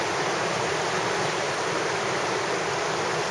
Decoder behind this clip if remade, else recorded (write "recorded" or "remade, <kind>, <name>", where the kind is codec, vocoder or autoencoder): recorded